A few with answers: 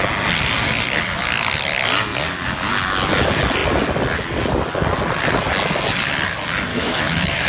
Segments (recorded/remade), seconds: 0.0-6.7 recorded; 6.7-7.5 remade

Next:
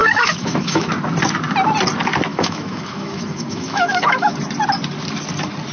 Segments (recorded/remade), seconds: 0.0-0.9 remade; 0.9-2.3 recorded; 2.3-4.3 remade; 4.3-5.7 recorded

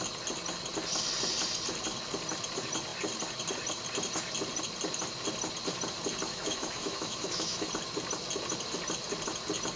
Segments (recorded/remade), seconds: 0.0-6.3 recorded; 6.3-7.7 remade; 7.7-9.8 recorded

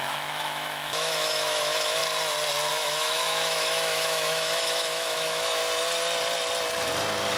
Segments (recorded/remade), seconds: 0.0-2.0 remade; 2.0-2.7 recorded; 2.7-5.6 remade; 5.6-7.4 recorded

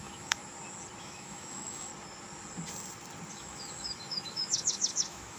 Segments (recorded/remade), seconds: 0.0-0.4 remade; 0.4-1.0 recorded; 1.0-1.9 remade; 1.9-3.3 recorded; 3.3-5.4 remade